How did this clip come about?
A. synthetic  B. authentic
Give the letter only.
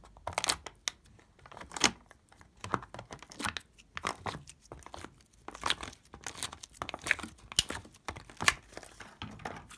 B